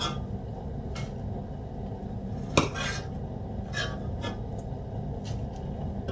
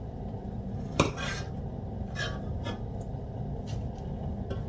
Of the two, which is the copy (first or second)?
second